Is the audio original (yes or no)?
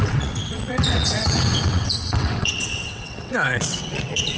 no